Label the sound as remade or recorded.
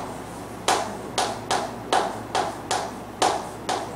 recorded